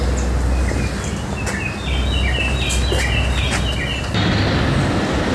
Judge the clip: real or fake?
real